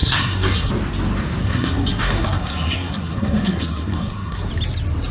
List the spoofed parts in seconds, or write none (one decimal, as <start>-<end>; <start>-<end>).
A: 0.0-0.7; 1.4-4.5